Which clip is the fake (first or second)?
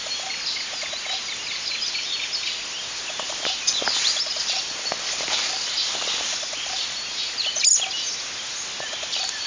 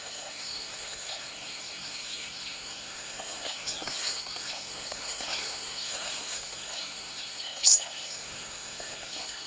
second